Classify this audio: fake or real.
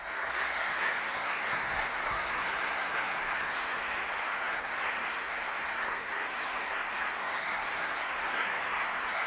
fake